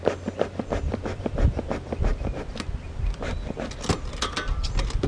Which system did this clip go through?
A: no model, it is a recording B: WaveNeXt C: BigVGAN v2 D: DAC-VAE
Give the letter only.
A